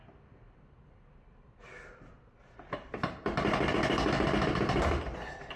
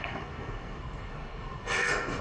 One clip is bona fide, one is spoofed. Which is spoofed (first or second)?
second